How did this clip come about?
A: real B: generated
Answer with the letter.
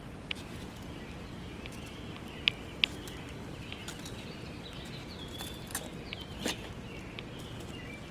A